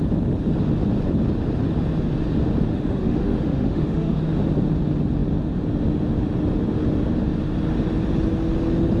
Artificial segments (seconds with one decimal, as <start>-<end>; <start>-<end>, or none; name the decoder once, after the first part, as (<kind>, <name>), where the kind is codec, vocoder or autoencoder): 2.7-4.2 (autoencoder, DAC-VAE)